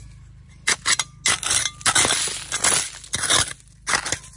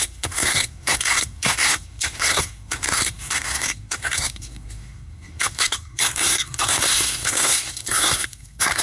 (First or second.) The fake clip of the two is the second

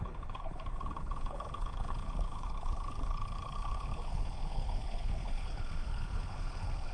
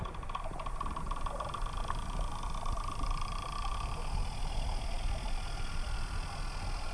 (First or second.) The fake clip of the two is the first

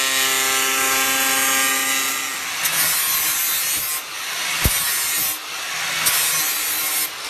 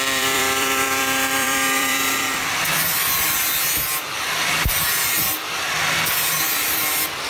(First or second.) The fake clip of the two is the second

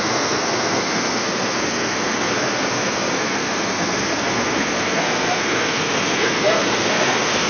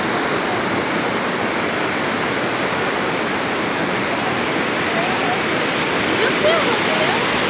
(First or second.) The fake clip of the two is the first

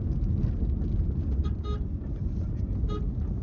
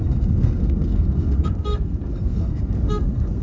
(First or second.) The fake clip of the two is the second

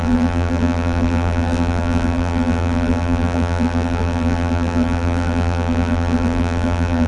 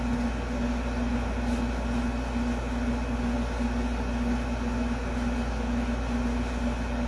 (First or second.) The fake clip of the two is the first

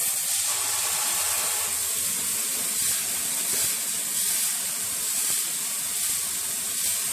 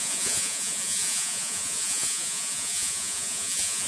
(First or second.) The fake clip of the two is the second